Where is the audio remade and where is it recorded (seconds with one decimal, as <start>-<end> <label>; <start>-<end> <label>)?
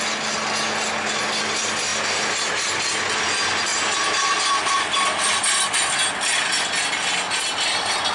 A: 0.0-8.1 recorded